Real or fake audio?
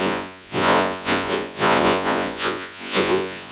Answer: fake